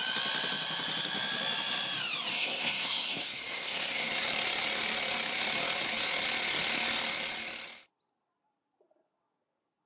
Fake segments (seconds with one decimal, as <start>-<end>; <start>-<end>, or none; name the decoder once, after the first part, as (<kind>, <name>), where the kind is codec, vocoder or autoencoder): 2.3-4.1 (codec, SNAC)